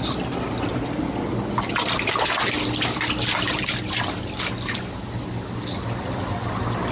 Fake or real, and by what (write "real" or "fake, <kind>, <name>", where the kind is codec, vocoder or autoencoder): real